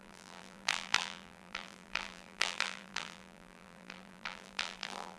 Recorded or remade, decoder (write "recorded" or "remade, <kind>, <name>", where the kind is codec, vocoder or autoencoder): remade, vocoder, BigVGAN v2